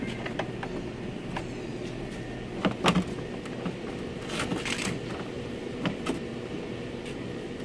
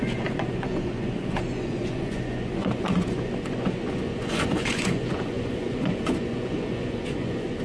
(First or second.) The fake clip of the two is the second